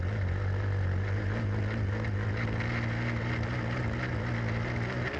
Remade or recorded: recorded